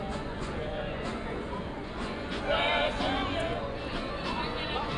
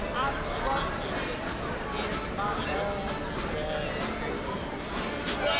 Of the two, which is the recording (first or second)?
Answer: second